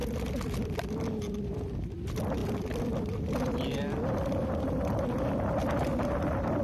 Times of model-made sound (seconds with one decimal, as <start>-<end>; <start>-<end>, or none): none